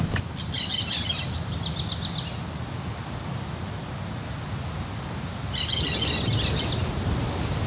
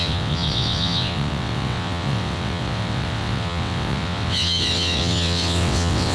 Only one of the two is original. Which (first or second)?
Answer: first